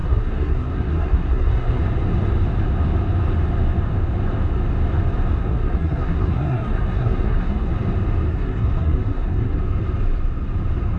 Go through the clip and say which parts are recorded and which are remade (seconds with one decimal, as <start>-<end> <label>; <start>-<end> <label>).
0.0-1.8 remade; 1.8-5.4 recorded; 5.4-7.7 remade; 7.7-8.3 recorded; 8.3-9.6 remade; 9.6-11.0 recorded